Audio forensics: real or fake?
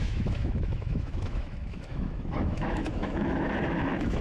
fake